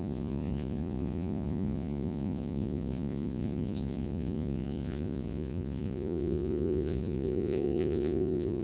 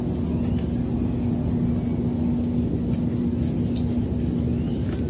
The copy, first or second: first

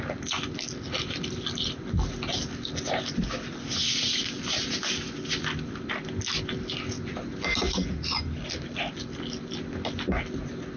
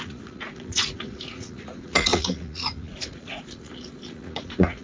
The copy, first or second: second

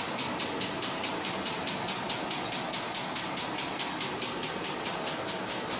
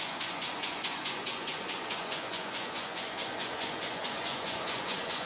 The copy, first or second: second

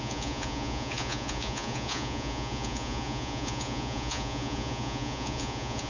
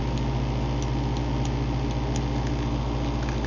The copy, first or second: first